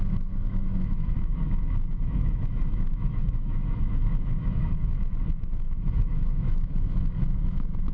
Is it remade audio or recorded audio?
remade